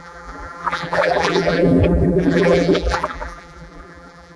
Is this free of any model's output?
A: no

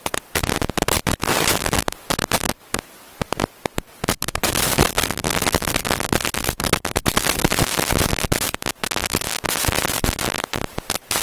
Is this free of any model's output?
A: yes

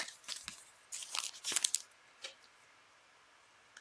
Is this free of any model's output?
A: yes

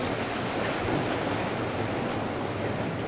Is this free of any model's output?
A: yes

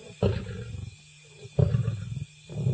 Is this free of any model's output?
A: yes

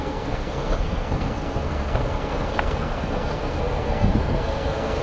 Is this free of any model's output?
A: no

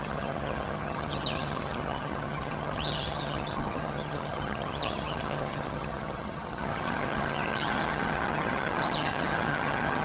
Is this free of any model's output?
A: no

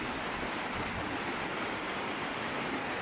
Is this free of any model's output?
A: yes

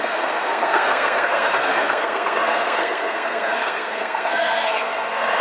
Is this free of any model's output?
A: no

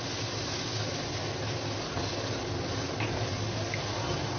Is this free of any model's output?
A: yes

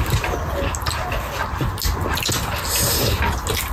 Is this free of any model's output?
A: yes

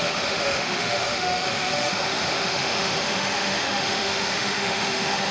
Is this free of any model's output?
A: no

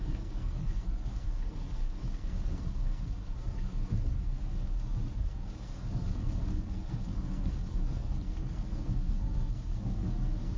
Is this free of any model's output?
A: no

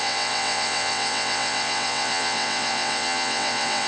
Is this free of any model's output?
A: no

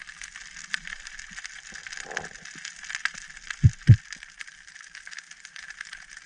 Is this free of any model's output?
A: yes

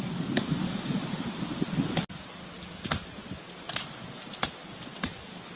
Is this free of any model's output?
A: yes